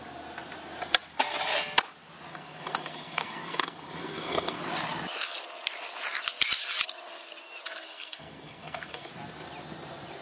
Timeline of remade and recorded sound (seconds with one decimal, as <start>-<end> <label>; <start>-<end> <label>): 0.0-2.3 recorded; 2.3-4.6 remade; 4.6-7.8 recorded; 7.8-9.1 remade; 9.1-10.2 recorded